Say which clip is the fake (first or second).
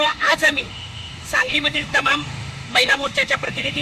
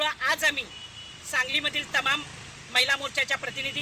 first